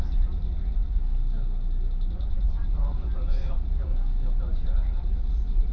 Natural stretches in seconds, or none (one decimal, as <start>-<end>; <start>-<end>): 1.0-2.1; 3.9-4.4